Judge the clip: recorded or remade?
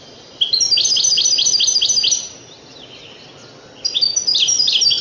recorded